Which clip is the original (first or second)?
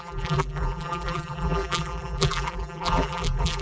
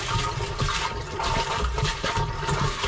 second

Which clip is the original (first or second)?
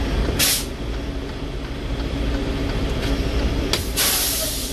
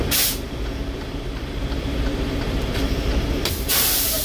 first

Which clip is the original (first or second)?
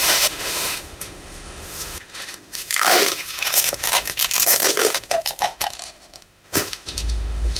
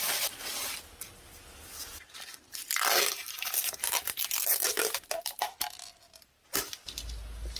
second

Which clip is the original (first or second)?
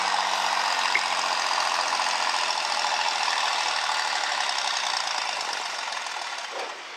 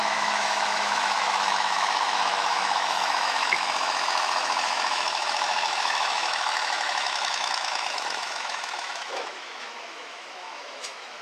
first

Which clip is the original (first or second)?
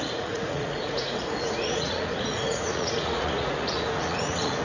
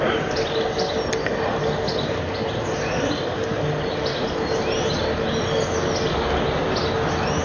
second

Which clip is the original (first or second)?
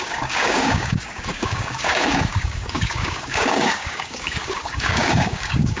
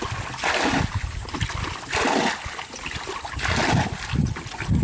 second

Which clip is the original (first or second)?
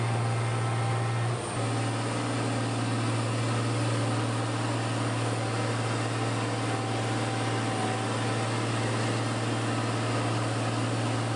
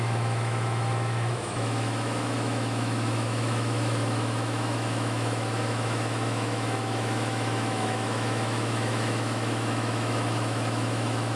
first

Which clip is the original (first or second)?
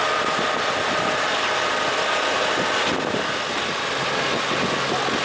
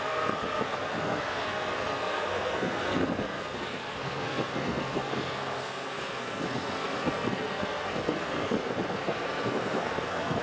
first